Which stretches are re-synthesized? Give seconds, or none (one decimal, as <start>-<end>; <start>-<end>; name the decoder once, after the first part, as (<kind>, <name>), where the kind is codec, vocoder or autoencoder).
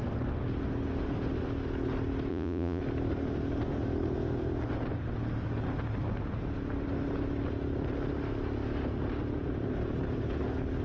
2.3-2.8 (vocoder, Vocos)